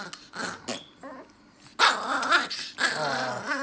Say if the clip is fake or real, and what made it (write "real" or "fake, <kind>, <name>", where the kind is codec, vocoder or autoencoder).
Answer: real